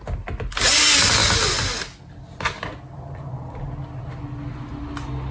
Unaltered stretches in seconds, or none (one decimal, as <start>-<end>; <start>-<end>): 0.0-5.3